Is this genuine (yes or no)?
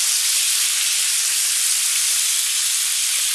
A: yes